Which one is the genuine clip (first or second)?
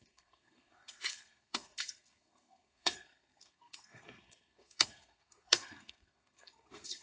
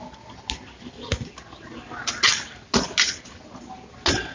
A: second